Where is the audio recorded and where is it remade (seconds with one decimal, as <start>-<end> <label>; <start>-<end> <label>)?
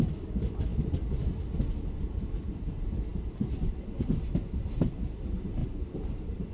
0.0-6.5 recorded